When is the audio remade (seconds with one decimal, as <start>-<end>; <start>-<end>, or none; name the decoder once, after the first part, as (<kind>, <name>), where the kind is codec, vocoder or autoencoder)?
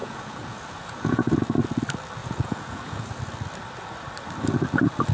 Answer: 0.0-1.4 (vocoder, Vocos); 2.2-3.2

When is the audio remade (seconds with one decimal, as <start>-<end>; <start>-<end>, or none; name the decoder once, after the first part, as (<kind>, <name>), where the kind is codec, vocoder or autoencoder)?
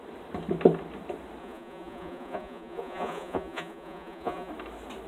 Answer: 1.4-4.5 (vocoder, Vocos)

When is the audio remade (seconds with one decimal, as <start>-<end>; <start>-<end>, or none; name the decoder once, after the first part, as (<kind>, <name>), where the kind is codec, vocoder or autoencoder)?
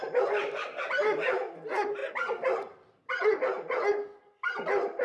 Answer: none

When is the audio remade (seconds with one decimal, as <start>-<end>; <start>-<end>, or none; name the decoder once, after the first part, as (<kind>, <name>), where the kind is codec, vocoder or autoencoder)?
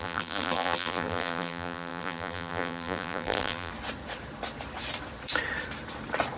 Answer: 0.0-3.7 (vocoder, BigVGAN v2)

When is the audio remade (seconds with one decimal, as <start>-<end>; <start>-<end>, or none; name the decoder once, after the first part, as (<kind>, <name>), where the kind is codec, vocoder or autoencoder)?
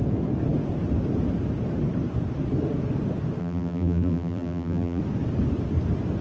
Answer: 3.4-5.0 (vocoder, BigVGAN v2)